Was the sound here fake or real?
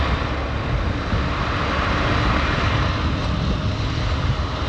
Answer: real